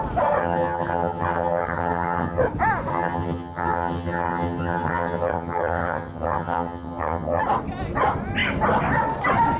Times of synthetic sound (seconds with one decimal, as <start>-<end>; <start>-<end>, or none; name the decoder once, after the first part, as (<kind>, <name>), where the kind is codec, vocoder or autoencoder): 0.4-2.4 (vocoder, HiFi-GAN); 2.9-7.4